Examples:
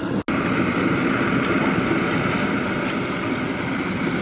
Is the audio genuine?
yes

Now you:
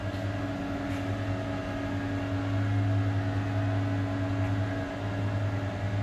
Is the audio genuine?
yes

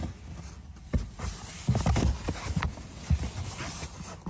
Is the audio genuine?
yes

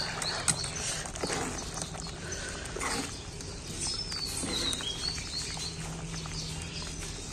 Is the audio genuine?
yes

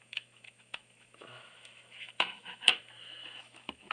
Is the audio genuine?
no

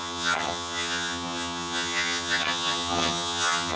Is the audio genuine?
no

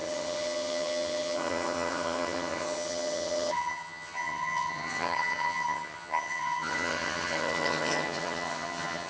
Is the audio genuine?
no